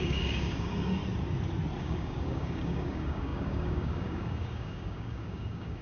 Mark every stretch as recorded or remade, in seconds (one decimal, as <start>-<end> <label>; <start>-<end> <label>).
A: 0.0-1.0 remade; 1.0-1.8 recorded; 1.8-5.8 remade